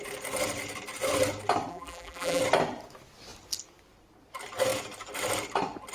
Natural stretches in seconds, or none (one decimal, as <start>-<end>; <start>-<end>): 0.0-1.7; 2.4-5.9